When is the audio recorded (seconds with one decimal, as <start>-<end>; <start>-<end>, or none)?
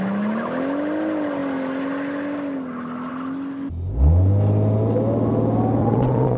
0.0-5.8